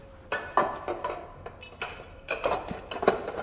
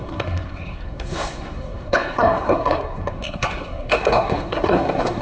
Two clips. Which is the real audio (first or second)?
first